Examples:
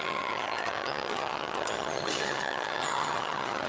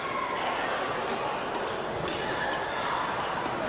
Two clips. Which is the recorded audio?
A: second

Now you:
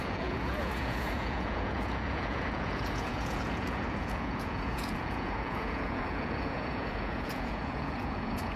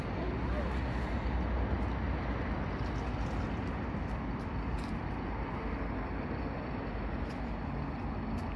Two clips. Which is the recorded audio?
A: second